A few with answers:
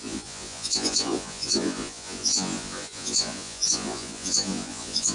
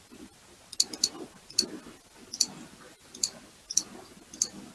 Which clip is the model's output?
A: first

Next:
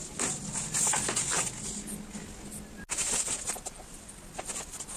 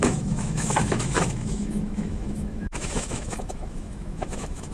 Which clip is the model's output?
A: second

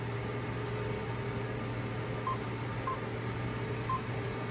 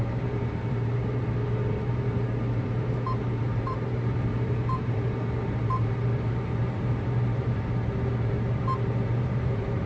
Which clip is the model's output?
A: second